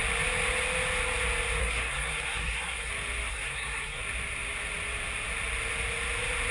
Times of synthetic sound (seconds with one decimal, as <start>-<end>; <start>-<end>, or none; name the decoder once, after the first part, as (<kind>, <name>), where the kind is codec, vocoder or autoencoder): 1.6-2.9 (codec, SNAC); 3.3-4.0